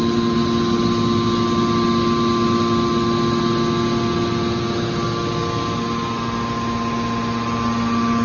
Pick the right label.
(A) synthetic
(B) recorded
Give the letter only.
B